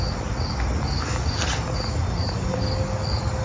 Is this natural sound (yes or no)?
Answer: yes